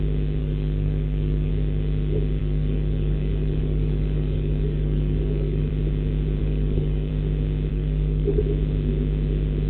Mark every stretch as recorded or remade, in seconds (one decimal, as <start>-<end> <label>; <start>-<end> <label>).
0.0-0.4 recorded; 0.4-1.5 remade; 1.5-2.4 recorded; 2.4-5.7 remade; 5.7-6.4 recorded; 6.4-7.1 remade; 7.1-7.7 recorded; 7.7-8.4 remade; 8.4-9.7 recorded